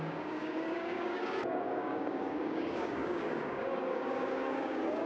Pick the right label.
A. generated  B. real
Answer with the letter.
A